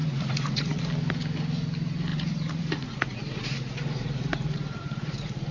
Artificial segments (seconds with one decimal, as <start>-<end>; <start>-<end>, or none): 0.0-0.8; 2.1-5.5